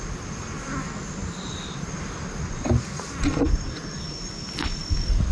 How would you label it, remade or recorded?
recorded